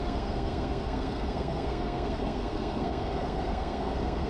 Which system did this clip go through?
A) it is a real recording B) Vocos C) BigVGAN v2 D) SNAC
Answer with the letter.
D